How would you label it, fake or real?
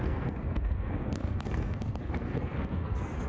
fake